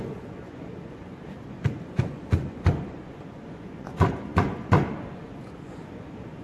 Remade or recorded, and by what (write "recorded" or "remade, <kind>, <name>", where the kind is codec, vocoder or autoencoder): remade, vocoder, Vocos